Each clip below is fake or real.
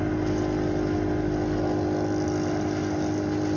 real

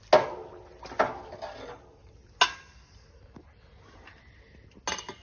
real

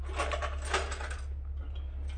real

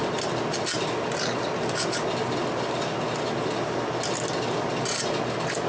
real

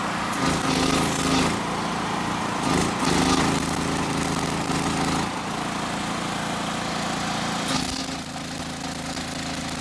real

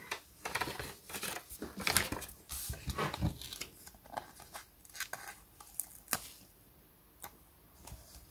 real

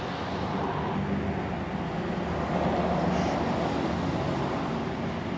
real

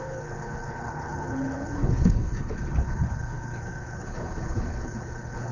fake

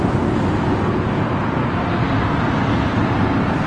real